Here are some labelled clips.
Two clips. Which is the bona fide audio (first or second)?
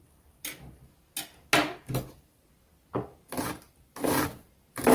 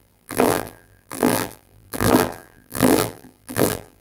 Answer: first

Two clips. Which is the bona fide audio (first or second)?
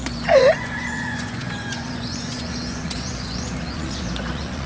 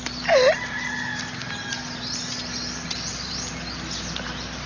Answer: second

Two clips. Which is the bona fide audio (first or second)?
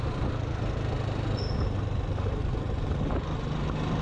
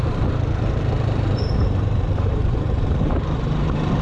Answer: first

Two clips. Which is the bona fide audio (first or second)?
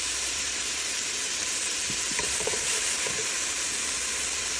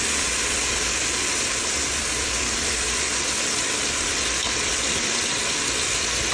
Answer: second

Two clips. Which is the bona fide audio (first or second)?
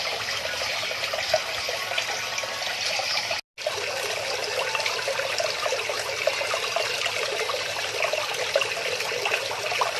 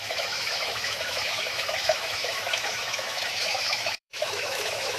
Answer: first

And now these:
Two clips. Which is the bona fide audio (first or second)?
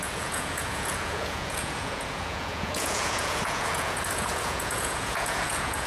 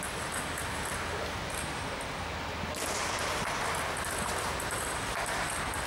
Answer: second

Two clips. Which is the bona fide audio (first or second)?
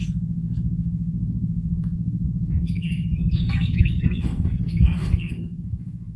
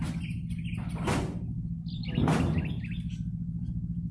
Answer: second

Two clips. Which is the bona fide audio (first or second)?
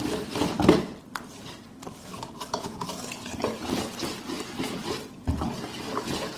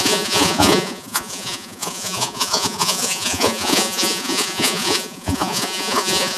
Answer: first